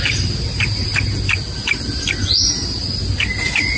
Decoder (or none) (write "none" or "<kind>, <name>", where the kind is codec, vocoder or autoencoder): none